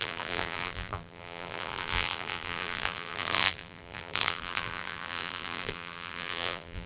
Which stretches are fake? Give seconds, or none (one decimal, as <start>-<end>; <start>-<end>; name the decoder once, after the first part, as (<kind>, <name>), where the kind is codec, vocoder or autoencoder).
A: 0.0-6.9 (vocoder, BigVGAN v2)